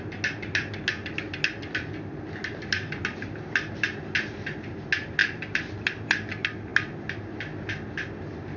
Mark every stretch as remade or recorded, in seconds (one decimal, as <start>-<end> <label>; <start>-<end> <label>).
0.0-8.6 recorded